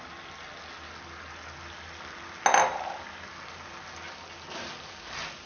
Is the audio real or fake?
real